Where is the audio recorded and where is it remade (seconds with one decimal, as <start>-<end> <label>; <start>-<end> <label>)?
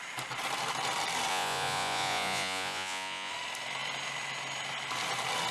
0.0-1.3 recorded; 1.3-3.3 remade; 3.3-5.5 recorded